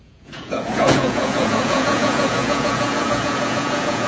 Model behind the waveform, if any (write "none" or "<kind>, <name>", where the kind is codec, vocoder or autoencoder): vocoder, Vocos